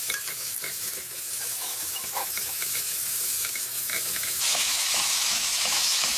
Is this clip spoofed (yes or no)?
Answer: yes